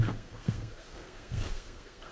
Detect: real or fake fake